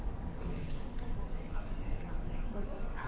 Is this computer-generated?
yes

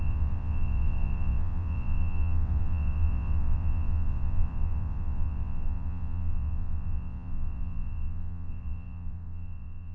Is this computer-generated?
yes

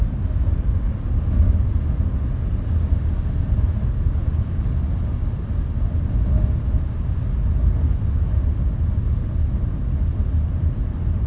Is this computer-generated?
no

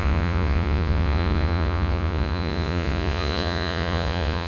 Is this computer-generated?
yes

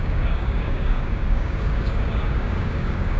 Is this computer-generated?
yes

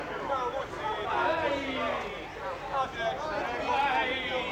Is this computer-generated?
no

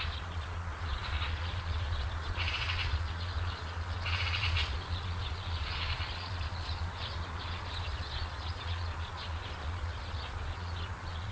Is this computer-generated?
yes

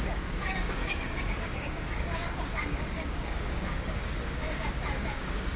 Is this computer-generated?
yes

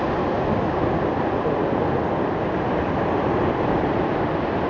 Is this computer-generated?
yes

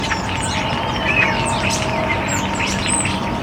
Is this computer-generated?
no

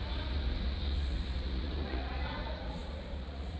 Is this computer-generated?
yes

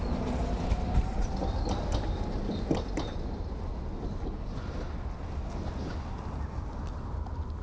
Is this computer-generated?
no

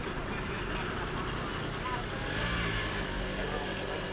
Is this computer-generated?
no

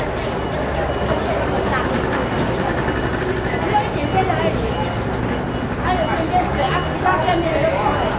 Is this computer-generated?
no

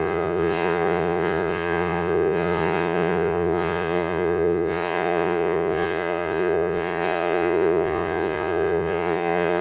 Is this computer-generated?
yes